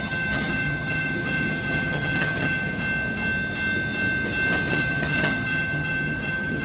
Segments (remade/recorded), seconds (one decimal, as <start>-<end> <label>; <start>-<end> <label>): 0.0-2.7 remade; 2.7-4.7 recorded; 4.7-6.6 remade